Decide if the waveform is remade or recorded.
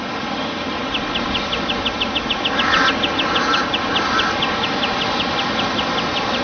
recorded